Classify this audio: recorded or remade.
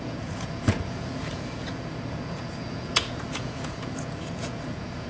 remade